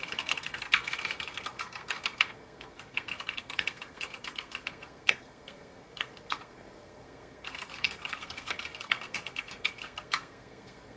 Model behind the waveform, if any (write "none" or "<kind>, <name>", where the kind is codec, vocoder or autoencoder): codec, SNAC